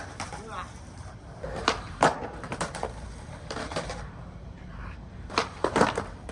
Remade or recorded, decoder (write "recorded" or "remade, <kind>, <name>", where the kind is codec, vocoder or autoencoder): remade, vocoder, BigVGAN v2